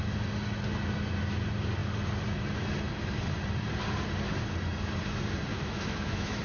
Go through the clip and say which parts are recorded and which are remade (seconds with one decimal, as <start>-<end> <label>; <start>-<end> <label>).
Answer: 0.0-5.5 recorded; 5.5-6.4 remade